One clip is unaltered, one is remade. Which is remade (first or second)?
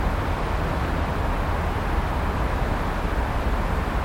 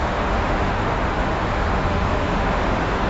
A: second